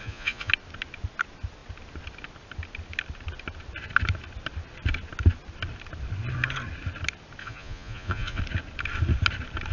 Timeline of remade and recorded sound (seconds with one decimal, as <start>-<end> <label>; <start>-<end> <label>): 0.0-0.5 remade; 0.5-7.4 recorded; 7.4-8.4 remade; 8.4-9.7 recorded